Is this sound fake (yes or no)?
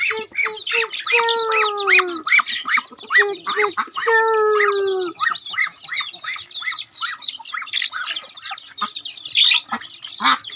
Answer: no